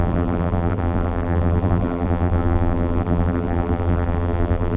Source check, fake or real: fake